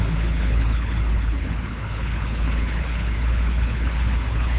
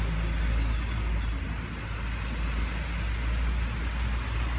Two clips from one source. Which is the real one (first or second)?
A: second